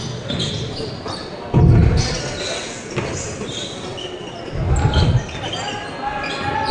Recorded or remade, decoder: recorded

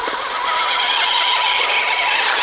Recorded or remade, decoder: recorded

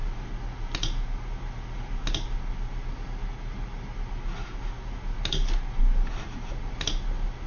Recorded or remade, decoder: recorded